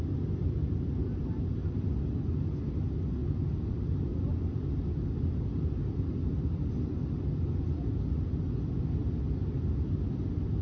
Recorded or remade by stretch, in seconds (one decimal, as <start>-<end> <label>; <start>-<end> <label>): 0.0-10.6 recorded